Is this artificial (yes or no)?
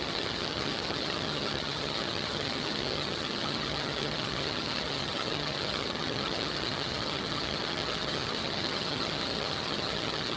yes